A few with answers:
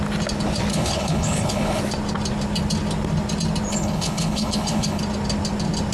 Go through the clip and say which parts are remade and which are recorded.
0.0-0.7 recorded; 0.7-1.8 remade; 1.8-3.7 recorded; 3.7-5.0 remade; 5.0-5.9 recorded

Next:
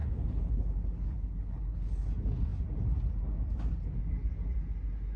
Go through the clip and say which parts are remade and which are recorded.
0.0-2.1 remade; 2.1-5.2 recorded

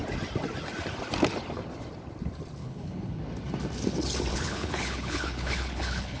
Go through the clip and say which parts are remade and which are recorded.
0.0-2.6 recorded; 2.6-3.2 remade; 3.2-4.3 recorded; 4.3-6.2 remade

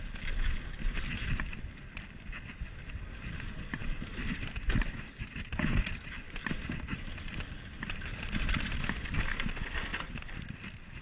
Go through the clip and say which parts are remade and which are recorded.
0.0-11.0 recorded